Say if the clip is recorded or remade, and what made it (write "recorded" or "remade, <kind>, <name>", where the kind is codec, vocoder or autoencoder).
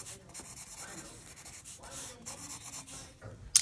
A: recorded